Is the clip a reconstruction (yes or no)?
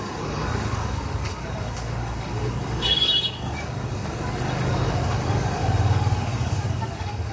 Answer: yes